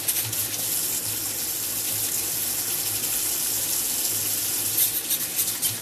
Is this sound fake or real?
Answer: real